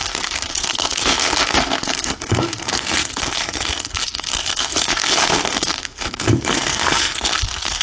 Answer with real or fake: fake